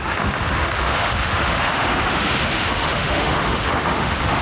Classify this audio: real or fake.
fake